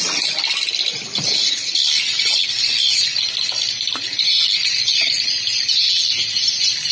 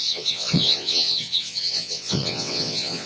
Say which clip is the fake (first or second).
second